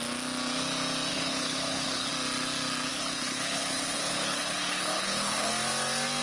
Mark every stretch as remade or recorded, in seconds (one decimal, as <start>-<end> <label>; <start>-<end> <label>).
0.0-1.1 recorded; 1.1-2.1 remade; 2.1-2.9 recorded; 2.9-5.5 remade; 5.5-6.2 recorded